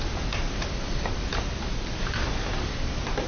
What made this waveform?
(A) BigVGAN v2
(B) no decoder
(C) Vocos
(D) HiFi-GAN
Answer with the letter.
B